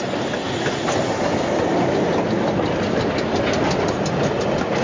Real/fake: real